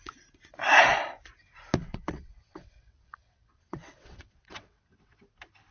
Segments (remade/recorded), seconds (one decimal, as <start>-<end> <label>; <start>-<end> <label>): 0.0-1.8 recorded; 1.8-5.2 remade; 5.2-5.7 recorded